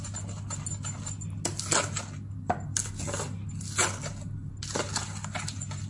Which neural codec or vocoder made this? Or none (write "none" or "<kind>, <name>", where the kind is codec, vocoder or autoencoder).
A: none